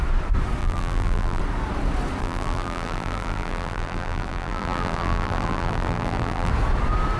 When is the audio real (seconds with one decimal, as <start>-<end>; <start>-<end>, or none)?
0.0-0.6; 1.4-2.2; 6.5-7.2